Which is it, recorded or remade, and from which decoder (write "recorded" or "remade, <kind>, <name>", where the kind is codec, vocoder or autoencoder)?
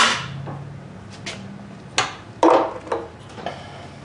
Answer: recorded